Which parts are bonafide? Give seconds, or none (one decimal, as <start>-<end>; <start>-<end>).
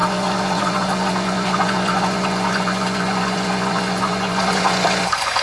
none